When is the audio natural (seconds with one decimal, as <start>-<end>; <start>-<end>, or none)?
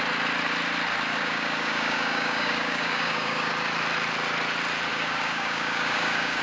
0.0-1.1; 3.5-4.9